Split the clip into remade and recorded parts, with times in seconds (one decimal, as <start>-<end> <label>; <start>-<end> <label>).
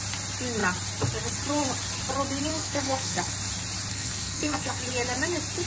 0.0-2.5 recorded; 2.5-3.3 remade; 3.3-3.9 recorded; 3.9-4.8 remade; 4.8-5.7 recorded